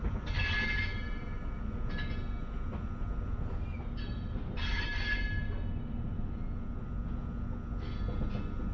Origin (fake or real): real